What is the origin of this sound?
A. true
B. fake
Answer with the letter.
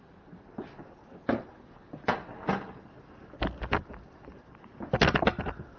A